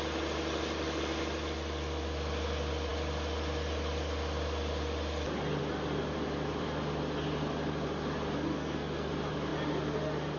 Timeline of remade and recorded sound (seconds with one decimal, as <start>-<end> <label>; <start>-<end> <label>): 0.0-8.5 recorded; 8.5-9.1 remade; 9.1-10.4 recorded

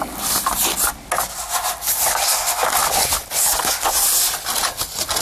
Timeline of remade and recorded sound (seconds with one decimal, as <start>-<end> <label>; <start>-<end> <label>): 0.0-5.2 recorded

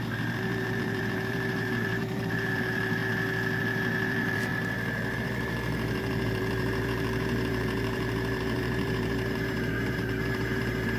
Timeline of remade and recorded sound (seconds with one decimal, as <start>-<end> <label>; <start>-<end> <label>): 0.0-3.0 remade; 3.0-3.6 recorded; 3.6-4.5 remade; 4.5-5.2 recorded; 5.2-11.0 remade

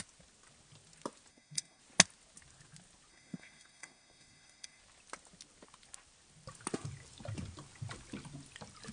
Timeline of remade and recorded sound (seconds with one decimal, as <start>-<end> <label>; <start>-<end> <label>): 0.0-1.3 recorded; 1.3-1.8 remade; 1.8-3.1 recorded; 3.1-4.8 remade; 4.8-8.9 recorded

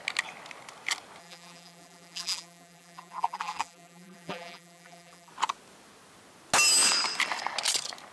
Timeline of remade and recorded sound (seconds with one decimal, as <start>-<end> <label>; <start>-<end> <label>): 0.0-1.2 recorded; 1.2-5.3 remade; 5.3-8.1 recorded

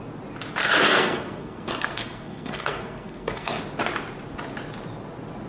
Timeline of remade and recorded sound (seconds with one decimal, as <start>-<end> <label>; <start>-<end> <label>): 0.0-0.6 recorded; 0.6-3.6 remade; 3.6-5.5 recorded

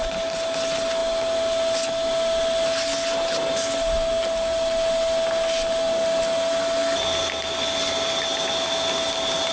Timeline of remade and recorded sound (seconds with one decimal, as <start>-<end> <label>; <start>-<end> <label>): 0.0-9.5 recorded